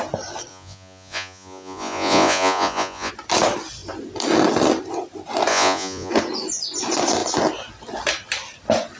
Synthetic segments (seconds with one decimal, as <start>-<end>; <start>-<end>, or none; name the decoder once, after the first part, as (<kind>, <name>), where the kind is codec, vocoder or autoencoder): 0.5-3.1 (vocoder, Vocos); 5.5-6.1